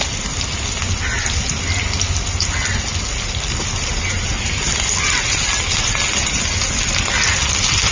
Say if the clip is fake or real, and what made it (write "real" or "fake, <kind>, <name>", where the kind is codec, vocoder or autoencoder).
real